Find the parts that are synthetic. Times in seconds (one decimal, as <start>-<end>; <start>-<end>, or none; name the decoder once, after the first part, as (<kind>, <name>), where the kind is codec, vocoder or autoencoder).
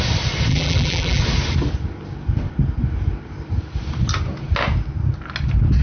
0.5-1.2 (vocoder, BigVGAN v2)